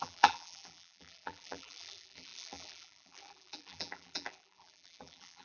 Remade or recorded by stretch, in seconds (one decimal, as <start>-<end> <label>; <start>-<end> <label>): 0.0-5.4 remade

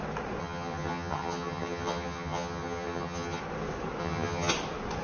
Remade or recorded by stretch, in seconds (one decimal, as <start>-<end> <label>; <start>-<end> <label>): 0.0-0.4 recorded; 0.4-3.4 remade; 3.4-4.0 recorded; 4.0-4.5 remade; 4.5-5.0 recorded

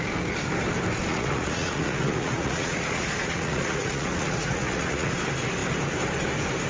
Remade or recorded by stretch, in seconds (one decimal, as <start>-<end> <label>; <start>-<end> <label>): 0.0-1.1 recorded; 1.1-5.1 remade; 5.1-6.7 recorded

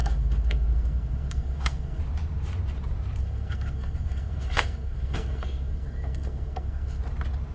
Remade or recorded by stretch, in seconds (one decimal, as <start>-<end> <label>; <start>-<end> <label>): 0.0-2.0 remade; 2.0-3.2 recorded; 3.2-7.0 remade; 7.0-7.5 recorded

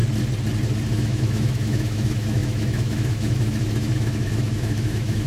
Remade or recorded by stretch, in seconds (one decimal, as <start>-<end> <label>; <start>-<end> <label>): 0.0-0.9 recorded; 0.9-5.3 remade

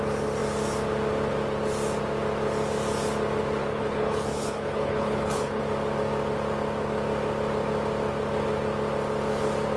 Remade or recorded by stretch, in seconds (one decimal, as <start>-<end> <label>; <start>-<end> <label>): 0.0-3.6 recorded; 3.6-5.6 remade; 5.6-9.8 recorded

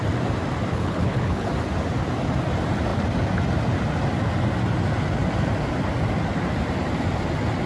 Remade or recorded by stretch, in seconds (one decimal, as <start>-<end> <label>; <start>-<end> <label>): 0.0-0.7 recorded; 0.7-1.5 remade; 1.5-7.7 recorded